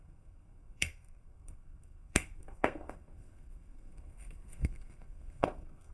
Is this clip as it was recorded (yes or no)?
no